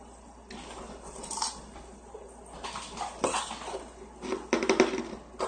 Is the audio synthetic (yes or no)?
no